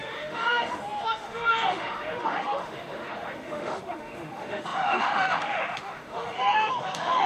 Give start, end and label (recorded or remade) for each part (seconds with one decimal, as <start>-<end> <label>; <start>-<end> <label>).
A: 0.0-7.3 remade